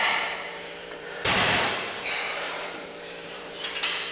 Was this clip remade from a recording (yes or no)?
yes